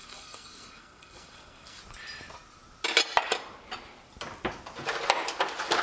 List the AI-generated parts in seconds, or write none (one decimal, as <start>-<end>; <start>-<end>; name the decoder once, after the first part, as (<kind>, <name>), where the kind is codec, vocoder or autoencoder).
0.0-1.8 (codec, SNAC)